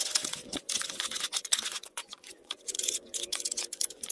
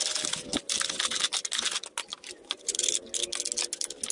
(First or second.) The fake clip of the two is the first